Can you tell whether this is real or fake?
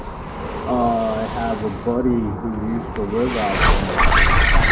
real